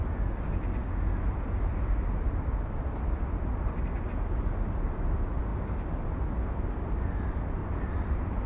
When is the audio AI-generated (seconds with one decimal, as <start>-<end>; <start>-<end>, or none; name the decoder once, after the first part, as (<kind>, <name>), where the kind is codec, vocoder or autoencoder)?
0.8-2.5 (vocoder, BigVGAN v2); 7.6-8.5